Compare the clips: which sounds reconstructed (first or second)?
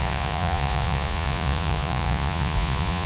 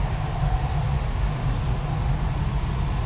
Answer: first